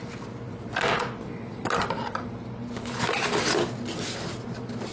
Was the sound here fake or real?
real